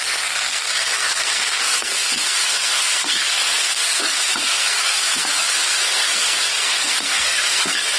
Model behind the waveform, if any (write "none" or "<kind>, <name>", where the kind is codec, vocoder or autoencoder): codec, SNAC